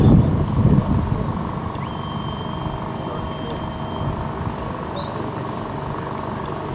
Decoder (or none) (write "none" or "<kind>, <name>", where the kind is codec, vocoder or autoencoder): none